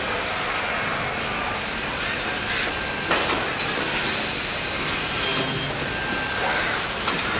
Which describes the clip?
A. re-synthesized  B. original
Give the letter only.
B